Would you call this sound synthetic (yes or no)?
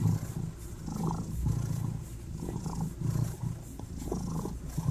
no